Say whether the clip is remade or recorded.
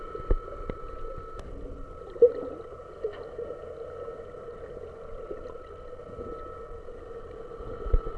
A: recorded